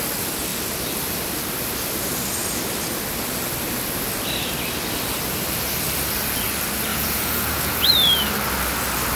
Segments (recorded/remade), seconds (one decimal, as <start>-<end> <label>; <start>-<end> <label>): 0.0-6.9 recorded; 6.9-7.9 remade; 7.9-9.2 recorded